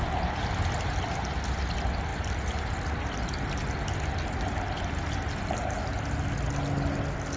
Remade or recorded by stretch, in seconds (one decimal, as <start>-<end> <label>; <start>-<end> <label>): 0.0-7.4 recorded